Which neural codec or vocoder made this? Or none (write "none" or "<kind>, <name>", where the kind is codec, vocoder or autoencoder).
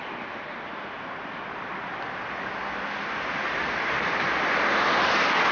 none